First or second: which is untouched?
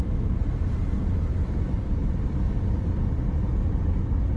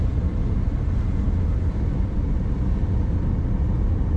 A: second